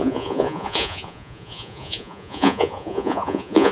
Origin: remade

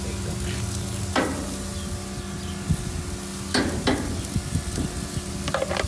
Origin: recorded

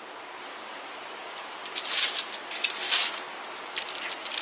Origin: recorded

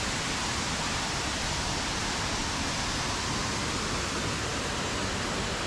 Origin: recorded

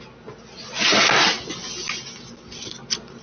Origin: recorded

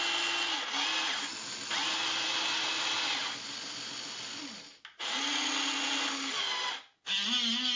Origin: recorded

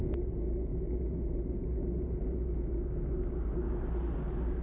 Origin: recorded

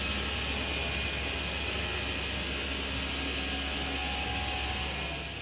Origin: recorded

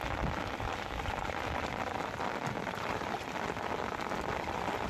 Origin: recorded